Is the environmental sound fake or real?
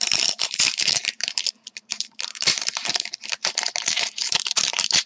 fake